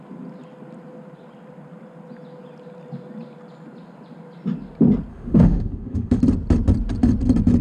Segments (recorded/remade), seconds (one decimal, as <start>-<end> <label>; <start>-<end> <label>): 0.0-5.1 recorded; 5.1-6.2 remade; 6.2-7.6 recorded